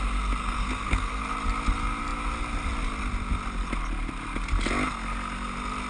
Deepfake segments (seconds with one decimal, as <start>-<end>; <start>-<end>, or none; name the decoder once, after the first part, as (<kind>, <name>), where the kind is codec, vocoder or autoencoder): 0.4-1.2 (codec, SNAC)